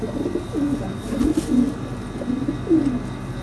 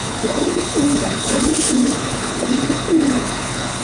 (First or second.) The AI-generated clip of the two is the second